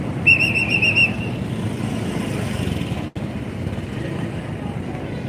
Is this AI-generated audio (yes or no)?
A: no